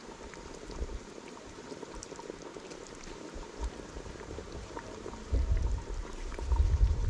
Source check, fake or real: fake